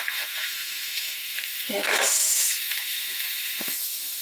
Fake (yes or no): yes